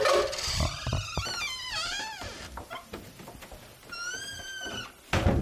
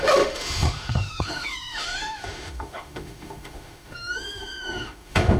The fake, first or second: second